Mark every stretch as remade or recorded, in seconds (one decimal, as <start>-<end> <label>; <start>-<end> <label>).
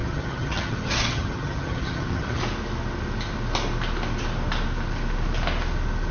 0.0-2.4 remade; 2.4-6.1 recorded